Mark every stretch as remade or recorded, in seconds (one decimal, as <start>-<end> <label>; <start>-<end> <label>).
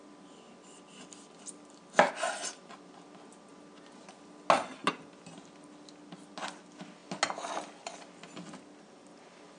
0.0-9.6 recorded